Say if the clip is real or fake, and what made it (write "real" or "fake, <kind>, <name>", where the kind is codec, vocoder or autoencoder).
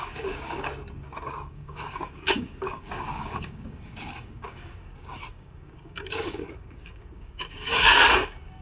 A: fake, codec, DAC